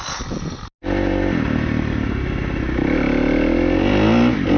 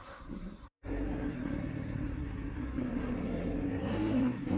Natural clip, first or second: first